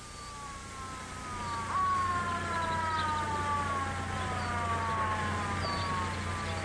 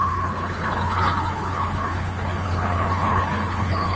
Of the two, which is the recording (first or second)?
first